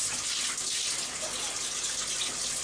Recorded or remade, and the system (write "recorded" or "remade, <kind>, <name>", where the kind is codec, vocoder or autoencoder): recorded